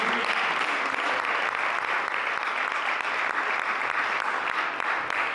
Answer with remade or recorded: recorded